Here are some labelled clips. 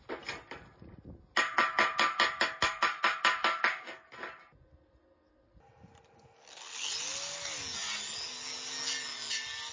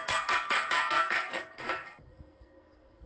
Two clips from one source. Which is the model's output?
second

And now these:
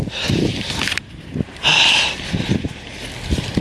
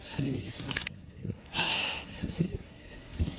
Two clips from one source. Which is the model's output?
second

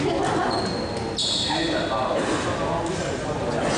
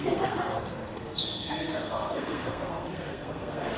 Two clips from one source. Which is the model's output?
second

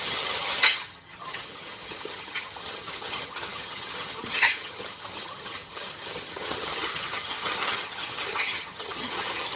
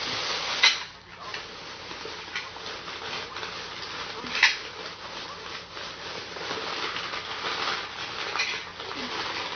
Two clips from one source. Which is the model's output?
first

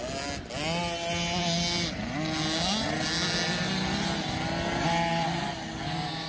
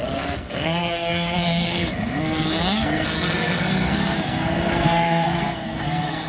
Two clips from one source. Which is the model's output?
second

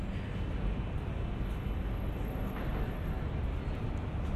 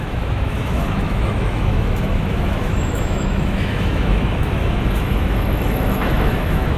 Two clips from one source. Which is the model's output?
second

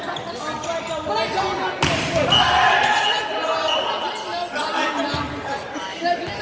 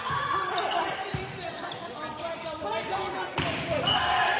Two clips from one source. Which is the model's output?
second